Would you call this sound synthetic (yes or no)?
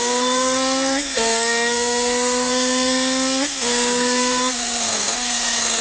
yes